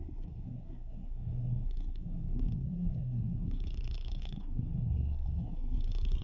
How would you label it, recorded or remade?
remade